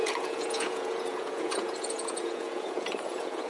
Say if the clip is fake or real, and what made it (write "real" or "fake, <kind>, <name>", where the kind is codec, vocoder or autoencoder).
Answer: fake, vocoder, Vocos